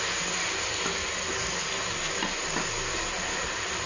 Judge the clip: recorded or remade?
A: recorded